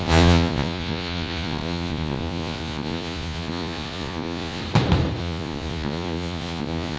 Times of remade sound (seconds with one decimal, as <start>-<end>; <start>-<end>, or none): 0.0-4.6; 5.2-7.0